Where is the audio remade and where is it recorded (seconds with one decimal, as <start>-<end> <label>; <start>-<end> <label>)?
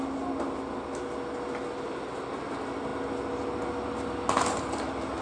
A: 0.0-5.2 recorded